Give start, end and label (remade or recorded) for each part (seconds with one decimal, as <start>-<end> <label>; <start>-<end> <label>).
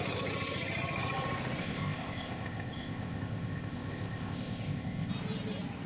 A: 0.0-1.6 recorded; 1.6-5.1 remade; 5.1-5.9 recorded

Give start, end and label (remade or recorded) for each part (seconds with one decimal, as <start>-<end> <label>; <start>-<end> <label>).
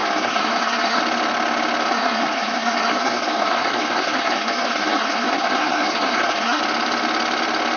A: 0.0-1.0 remade; 1.0-1.9 recorded; 1.9-6.6 remade; 6.6-7.8 recorded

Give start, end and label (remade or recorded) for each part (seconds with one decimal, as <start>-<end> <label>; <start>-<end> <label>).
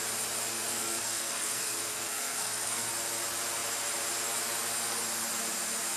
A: 0.0-0.5 recorded; 0.5-2.9 remade; 2.9-6.0 recorded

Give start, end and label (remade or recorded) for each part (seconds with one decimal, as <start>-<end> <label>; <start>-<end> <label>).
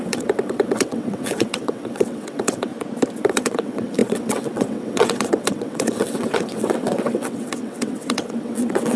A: 0.0-2.7 remade; 2.7-3.2 recorded; 3.2-9.0 remade